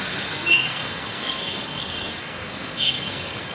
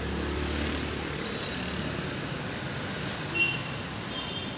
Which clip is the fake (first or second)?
first